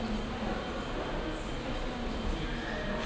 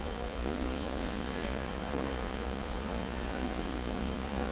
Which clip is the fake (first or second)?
second